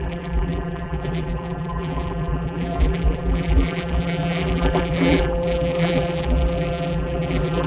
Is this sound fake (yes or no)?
yes